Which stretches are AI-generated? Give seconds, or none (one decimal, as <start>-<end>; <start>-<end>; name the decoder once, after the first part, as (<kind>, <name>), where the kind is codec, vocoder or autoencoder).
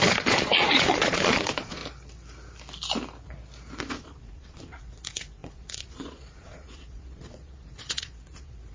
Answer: 0.0-1.8 (vocoder, Vocos); 3.9-8.7